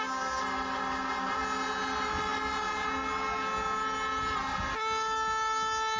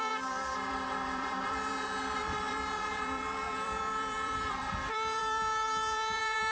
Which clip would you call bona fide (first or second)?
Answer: first